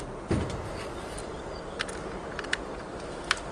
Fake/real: real